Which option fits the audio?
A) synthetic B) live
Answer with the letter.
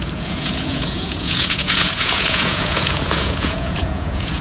A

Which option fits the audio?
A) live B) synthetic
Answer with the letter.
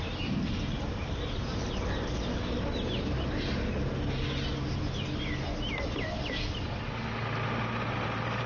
A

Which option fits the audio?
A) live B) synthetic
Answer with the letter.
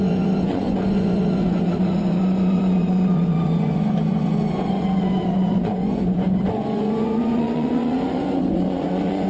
B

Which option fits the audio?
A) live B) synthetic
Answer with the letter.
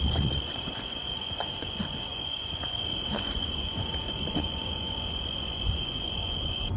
B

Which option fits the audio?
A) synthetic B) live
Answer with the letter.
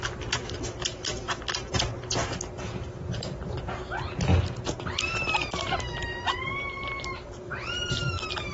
B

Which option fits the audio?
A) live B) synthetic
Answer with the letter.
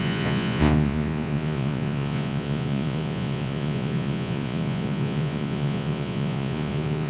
B